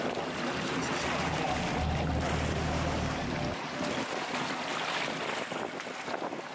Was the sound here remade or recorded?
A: recorded